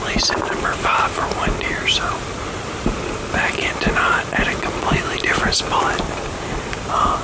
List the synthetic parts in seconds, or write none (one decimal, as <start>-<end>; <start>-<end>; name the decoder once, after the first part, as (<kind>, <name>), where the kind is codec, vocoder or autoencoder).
none